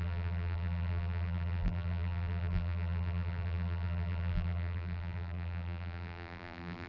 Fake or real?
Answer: fake